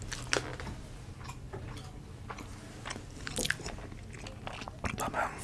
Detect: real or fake real